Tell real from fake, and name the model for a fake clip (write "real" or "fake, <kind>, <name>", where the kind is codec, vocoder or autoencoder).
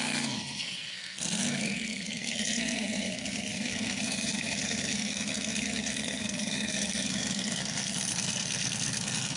fake, codec, SNAC